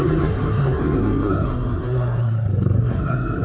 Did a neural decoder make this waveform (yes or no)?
yes